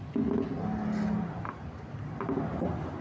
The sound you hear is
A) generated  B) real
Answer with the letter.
B